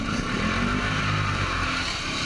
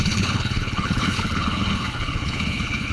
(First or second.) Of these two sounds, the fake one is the second